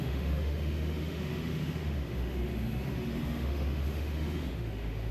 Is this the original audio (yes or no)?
no